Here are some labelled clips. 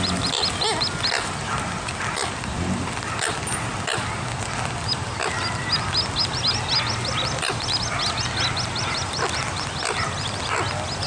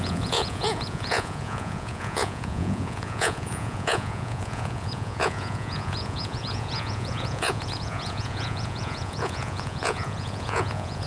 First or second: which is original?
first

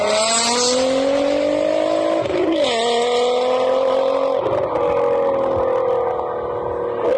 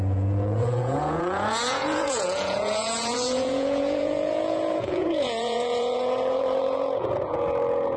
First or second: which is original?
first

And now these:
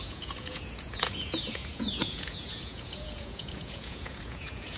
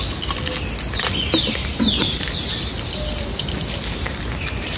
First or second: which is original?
second